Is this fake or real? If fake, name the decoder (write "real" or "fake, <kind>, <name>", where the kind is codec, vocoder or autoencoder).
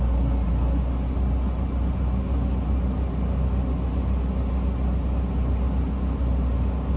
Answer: real